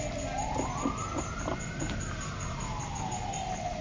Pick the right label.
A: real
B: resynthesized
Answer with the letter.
A